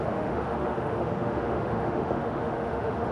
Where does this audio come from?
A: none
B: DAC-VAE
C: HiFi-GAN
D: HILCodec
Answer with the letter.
B